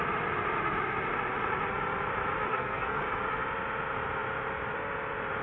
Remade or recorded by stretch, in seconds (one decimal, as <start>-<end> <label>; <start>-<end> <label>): 0.0-2.5 recorded; 2.5-3.0 remade; 3.0-5.4 recorded